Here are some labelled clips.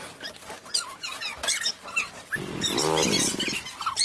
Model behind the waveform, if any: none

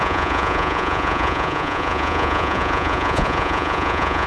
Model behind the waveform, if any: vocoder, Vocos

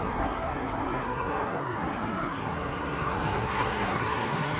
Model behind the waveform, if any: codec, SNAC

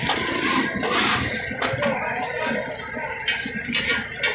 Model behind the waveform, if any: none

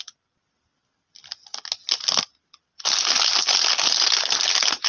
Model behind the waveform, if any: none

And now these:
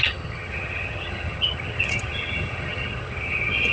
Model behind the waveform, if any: vocoder, HiFi-GAN